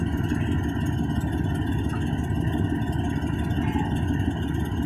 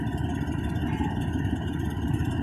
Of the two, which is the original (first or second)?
first